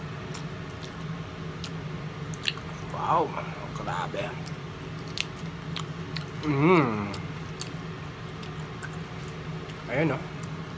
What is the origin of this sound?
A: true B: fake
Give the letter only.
A